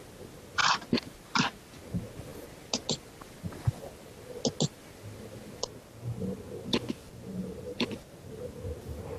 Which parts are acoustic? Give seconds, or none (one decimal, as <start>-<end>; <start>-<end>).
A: 0.0-7.0; 8.4-9.2